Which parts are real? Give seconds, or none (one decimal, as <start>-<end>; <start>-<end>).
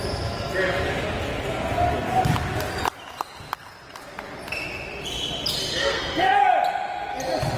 0.0-5.8; 6.4-7.6